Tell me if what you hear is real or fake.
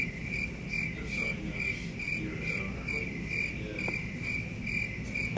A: real